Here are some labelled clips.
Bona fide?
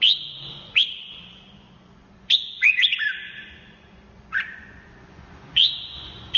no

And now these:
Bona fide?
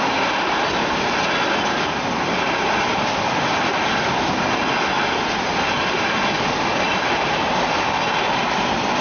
yes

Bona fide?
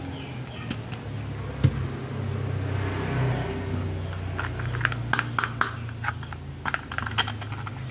yes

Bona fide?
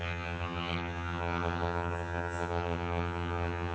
no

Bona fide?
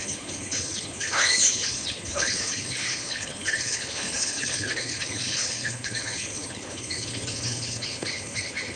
no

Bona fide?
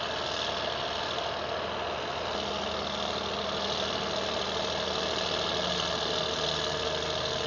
yes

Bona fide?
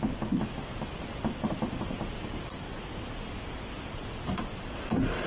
yes